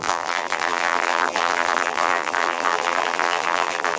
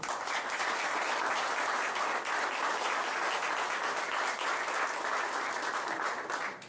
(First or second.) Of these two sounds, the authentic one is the second